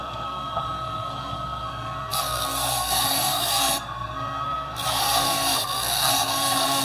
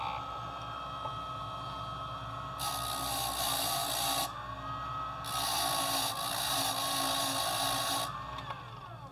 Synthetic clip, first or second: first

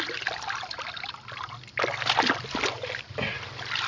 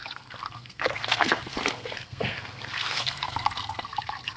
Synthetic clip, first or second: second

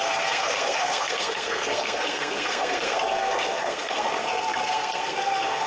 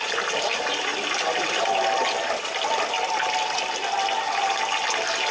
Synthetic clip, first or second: first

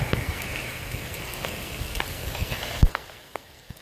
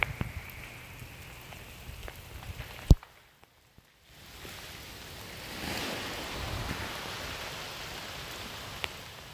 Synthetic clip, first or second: first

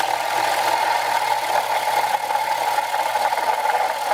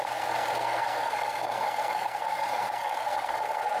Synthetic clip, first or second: second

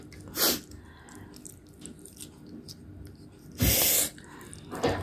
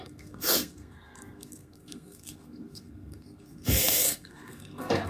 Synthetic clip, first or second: second